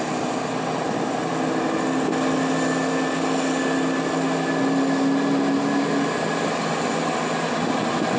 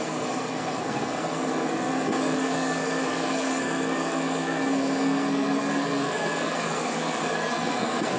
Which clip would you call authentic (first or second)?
first